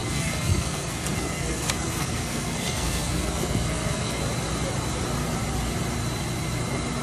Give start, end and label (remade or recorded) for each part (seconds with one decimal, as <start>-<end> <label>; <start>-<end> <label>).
0.0-4.2 remade; 4.2-7.0 recorded